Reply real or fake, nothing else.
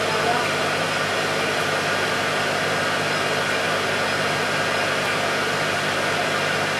real